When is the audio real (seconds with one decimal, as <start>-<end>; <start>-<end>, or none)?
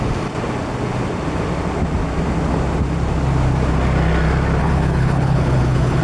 0.0-4.6